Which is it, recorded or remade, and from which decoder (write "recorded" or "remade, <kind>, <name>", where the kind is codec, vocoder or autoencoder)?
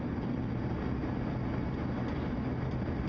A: recorded